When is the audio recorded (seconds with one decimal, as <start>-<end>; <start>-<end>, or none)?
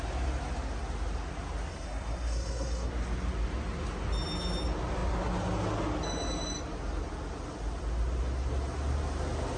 0.0-1.7; 2.9-9.6